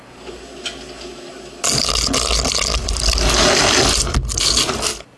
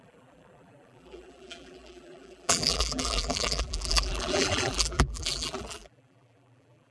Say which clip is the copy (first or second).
second